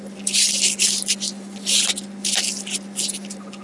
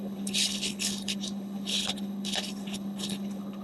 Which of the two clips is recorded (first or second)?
first